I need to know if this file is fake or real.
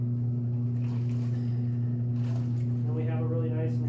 real